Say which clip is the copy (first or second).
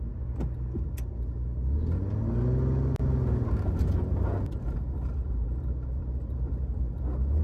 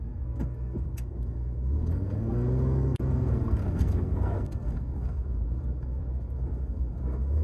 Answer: second